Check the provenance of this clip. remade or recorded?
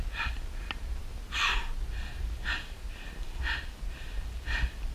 recorded